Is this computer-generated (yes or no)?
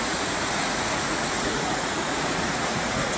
yes